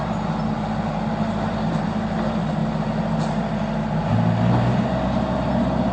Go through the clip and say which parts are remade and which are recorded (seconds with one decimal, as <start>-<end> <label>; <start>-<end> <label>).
0.0-5.9 recorded